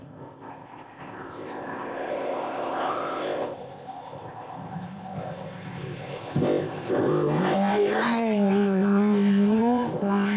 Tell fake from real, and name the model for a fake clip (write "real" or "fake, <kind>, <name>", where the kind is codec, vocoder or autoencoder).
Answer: fake, codec, ZipCodec